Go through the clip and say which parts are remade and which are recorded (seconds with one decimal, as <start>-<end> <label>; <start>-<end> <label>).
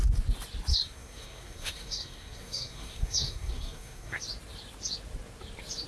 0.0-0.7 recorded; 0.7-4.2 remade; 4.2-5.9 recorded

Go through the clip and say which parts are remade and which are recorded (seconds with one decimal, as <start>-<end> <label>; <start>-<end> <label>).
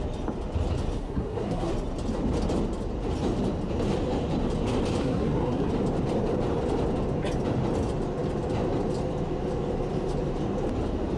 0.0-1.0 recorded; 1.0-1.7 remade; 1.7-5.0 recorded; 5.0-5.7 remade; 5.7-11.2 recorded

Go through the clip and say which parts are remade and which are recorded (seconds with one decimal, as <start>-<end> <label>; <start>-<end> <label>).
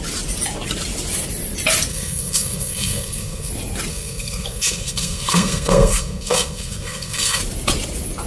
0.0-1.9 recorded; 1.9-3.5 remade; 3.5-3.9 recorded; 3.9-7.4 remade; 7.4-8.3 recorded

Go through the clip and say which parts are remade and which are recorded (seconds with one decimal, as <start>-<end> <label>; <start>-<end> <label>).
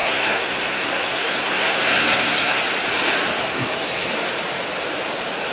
0.0-2.6 remade; 2.6-3.4 recorded; 3.4-4.1 remade; 4.1-5.5 recorded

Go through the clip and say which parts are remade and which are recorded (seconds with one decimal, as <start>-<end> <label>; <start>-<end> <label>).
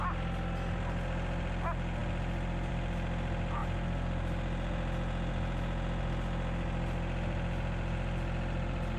0.0-9.0 recorded